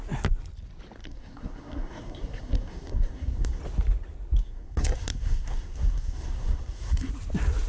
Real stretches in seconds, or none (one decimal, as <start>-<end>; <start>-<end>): 0.0-1.0; 3.6-4.4; 7.1-7.7